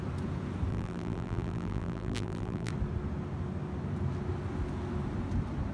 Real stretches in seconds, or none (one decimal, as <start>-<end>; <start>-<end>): 0.0-0.7; 2.7-5.7